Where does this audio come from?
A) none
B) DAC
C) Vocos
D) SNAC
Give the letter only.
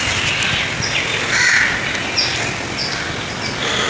A